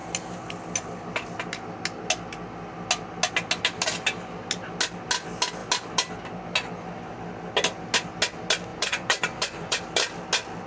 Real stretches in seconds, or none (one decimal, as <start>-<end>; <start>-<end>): 0.0-8.7; 9.8-10.7